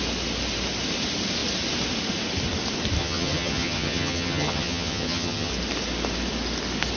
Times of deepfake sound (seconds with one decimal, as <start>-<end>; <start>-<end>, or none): 3.0-5.5